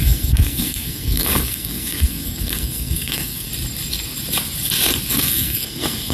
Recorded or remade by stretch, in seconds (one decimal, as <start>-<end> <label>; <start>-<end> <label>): 0.0-3.5 remade; 3.5-5.1 recorded; 5.1-6.1 remade